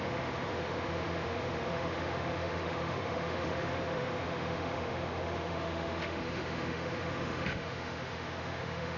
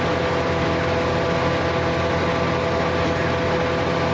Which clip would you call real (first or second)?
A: second